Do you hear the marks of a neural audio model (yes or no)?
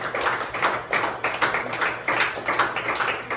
no